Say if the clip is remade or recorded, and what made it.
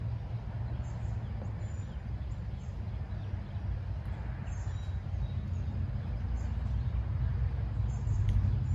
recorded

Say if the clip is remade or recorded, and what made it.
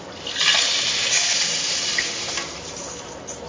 recorded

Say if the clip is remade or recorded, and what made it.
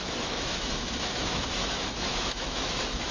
remade, autoencoder, DAC-VAE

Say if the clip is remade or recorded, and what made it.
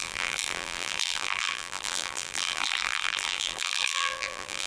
remade, vocoder, BigVGAN v2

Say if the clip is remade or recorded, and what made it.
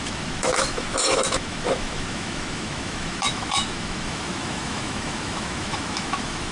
remade, autoencoder, DAC-VAE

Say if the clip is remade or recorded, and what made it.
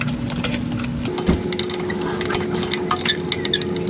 recorded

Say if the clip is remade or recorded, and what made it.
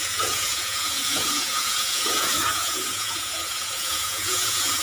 remade, vocoder, Vocos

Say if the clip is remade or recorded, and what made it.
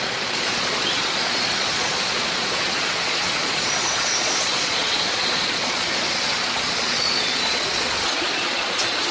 remade, vocoder, Vocos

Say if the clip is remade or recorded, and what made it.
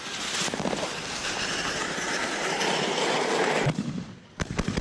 recorded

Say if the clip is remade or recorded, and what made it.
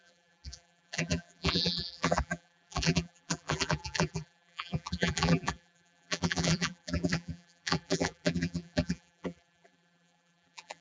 remade, vocoder, BigVGAN v2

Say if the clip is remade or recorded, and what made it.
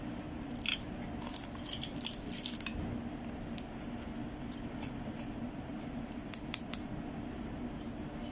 recorded